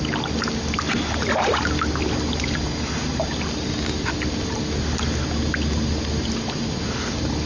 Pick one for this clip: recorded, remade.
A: recorded